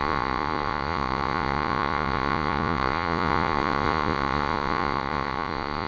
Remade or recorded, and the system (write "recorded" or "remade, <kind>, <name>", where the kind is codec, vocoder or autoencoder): remade, vocoder, Vocos